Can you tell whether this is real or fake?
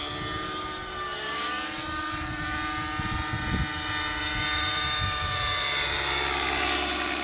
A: real